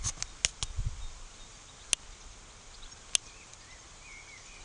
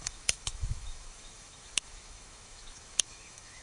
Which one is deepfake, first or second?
second